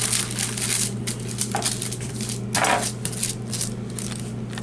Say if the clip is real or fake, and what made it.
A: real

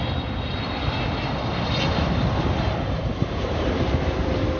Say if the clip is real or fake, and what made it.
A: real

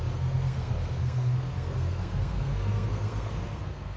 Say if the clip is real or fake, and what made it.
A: fake, codec, SNAC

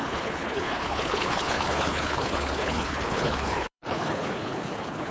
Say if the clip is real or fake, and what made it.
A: fake, codec, HILCodec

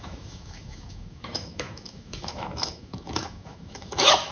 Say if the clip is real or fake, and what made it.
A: fake, autoencoder, DAC-VAE